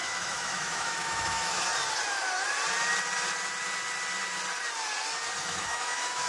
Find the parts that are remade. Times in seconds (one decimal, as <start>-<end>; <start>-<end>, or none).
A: 0.0-1.7; 5.4-6.3